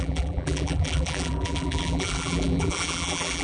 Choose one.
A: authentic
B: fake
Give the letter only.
B